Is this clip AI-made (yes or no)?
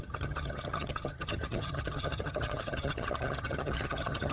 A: yes